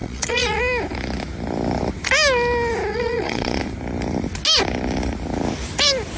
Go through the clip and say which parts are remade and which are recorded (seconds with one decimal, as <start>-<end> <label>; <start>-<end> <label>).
0.0-0.6 remade; 0.6-2.9 recorded; 2.9-3.6 remade; 3.6-6.2 recorded